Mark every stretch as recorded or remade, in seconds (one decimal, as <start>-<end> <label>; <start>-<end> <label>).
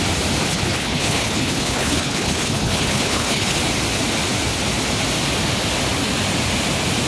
0.0-0.5 recorded; 0.5-3.6 remade; 3.6-7.1 recorded